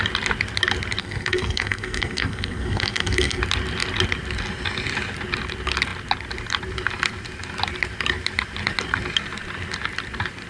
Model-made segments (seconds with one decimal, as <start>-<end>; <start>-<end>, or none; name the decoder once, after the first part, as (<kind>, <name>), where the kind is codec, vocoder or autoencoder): 1.0-3.4 (codec, SNAC)